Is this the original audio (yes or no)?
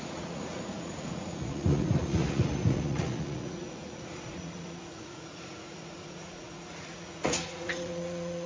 no